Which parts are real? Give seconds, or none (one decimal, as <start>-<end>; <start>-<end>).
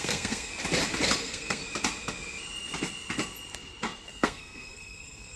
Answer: 0.5-1.2; 1.6-4.1